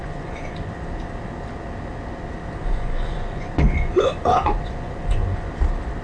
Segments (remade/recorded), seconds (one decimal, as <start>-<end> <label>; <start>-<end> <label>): 0.0-0.7 remade; 0.7-2.6 recorded; 2.6-5.5 remade; 5.5-6.0 recorded